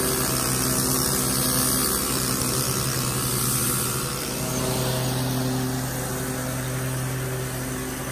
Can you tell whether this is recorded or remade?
recorded